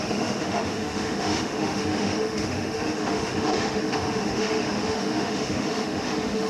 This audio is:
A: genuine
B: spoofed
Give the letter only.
B